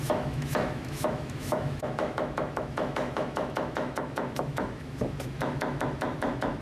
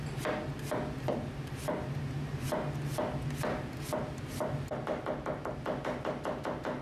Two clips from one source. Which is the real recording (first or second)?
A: second